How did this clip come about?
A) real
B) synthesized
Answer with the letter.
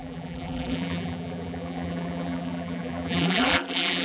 B